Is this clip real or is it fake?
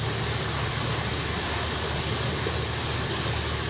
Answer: real